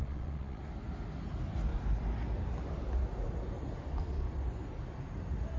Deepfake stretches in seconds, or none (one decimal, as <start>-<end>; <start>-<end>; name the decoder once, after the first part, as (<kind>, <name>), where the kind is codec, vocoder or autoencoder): 0.0-0.6 (vocoder, Vocos)

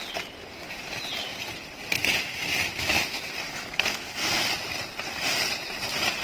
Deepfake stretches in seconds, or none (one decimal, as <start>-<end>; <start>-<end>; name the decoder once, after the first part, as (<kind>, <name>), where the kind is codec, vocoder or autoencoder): 3.5-4.4 (codec, SNAC)